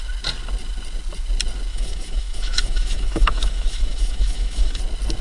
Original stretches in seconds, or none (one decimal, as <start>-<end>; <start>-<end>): 0.0-1.7; 4.8-5.2